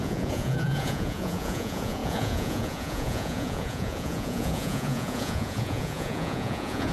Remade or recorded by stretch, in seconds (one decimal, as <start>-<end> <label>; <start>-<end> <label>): 0.0-6.9 remade

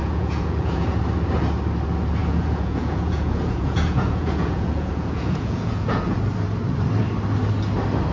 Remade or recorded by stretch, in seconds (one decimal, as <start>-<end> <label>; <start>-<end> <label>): 0.0-1.0 remade; 1.0-2.2 recorded; 2.2-6.2 remade; 6.2-8.1 recorded

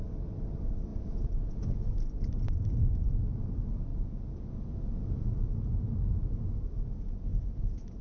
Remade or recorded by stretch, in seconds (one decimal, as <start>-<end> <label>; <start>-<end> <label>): 0.0-0.9 recorded; 0.9-1.8 remade; 1.8-3.9 recorded; 3.9-5.4 remade; 5.4-7.3 recorded; 7.3-8.0 remade

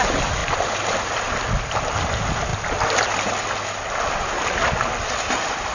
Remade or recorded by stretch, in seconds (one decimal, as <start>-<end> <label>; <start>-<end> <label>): 0.0-5.7 recorded

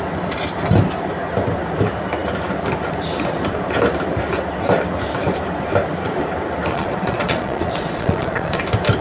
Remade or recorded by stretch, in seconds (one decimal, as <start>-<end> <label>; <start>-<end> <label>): 0.0-6.7 recorded; 6.7-8.6 remade; 8.6-9.0 recorded